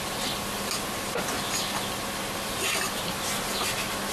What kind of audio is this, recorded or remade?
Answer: recorded